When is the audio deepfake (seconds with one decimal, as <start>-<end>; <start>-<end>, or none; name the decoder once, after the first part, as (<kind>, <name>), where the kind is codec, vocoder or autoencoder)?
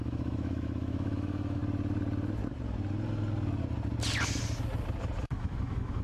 0.0-1.6 (autoencoder, DAC-VAE); 5.2-6.0